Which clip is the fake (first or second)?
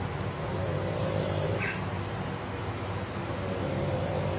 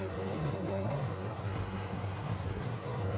second